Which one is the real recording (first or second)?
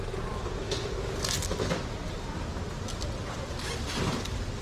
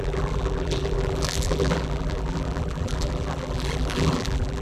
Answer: first